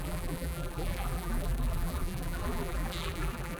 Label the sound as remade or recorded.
remade